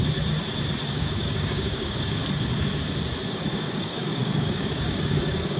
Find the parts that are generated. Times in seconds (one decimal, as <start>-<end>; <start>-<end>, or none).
0.9-2.2; 3.3-5.6